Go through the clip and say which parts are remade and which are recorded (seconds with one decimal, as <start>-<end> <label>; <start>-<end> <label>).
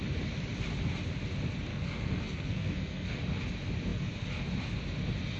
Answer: 0.0-1.7 recorded; 1.7-3.2 remade; 3.2-5.4 recorded